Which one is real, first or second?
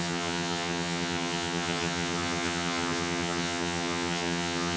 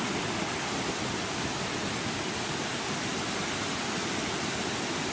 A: second